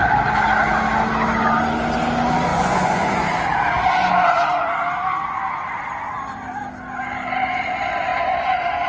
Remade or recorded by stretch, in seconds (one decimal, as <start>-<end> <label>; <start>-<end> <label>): 0.0-2.5 recorded; 2.5-3.3 remade; 3.3-8.1 recorded; 8.1-8.9 remade